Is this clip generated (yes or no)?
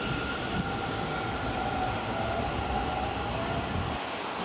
no